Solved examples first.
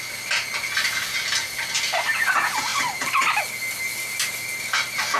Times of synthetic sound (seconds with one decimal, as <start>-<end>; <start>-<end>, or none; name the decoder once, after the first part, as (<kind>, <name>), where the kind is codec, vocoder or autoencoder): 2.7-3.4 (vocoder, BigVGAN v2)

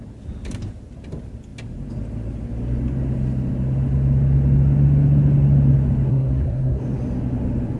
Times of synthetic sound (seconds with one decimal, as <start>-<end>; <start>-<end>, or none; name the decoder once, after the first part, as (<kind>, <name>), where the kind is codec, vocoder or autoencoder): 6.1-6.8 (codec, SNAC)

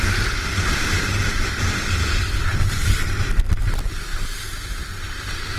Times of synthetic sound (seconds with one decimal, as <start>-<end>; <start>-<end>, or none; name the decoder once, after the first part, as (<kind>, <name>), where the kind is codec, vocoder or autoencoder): none

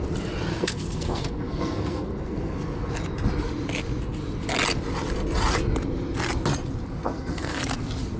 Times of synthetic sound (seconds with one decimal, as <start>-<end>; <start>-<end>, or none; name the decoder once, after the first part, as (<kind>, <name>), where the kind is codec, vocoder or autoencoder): 0.5-2.9 (codec, SNAC); 7.0-7.6